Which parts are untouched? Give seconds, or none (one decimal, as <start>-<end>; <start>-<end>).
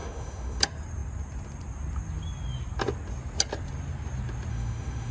0.6-4.5